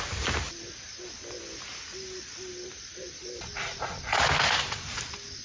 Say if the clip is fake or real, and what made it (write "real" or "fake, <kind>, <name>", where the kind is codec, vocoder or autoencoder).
real